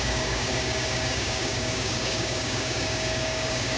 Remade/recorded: remade